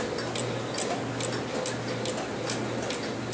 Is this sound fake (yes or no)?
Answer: no